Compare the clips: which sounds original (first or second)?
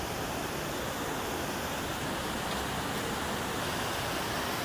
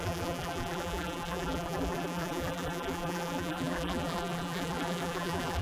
first